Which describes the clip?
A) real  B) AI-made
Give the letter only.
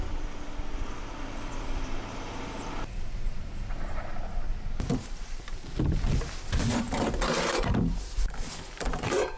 B